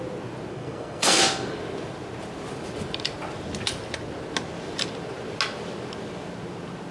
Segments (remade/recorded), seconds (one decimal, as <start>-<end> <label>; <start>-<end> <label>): 0.0-0.5 recorded; 0.5-1.2 remade; 1.2-6.9 recorded